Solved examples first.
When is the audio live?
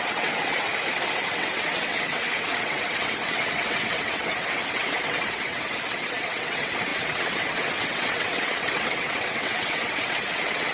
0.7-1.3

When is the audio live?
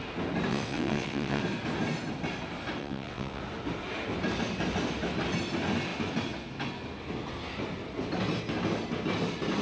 0.0-0.5; 1.4-2.8; 3.4-9.6